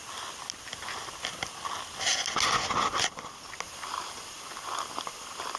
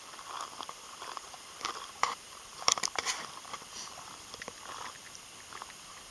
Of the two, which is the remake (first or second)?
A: second